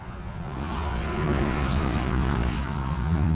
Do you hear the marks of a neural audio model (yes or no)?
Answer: yes